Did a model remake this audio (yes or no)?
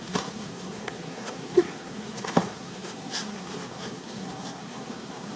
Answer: yes